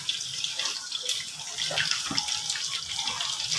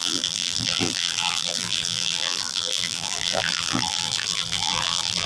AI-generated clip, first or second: second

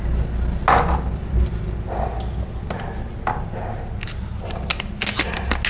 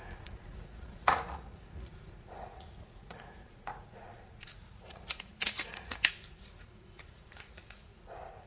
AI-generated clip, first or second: second